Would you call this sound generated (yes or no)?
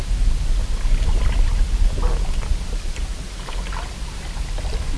no